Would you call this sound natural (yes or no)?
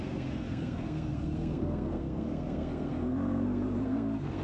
no